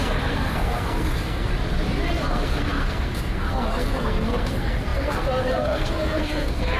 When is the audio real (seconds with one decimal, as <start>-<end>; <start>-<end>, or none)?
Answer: 1.5-2.2